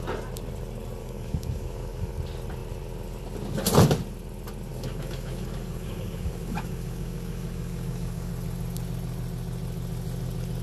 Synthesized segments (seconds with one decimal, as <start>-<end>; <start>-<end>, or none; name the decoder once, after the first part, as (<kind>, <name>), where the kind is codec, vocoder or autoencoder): 1.0-2.1 (codec, DAC); 4.7-8.3